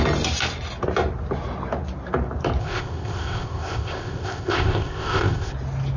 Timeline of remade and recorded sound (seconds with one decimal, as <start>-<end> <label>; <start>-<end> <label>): 0.0-2.6 recorded; 2.6-5.5 remade; 5.5-6.0 recorded